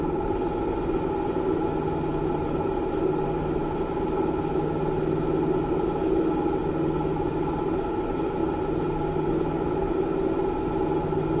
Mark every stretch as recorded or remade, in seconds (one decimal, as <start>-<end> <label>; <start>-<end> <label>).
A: 0.0-11.4 recorded